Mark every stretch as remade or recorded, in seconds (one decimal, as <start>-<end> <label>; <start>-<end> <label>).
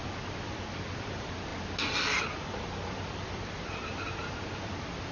0.0-5.1 recorded